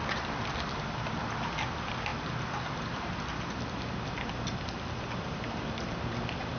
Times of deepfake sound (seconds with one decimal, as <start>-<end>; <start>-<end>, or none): none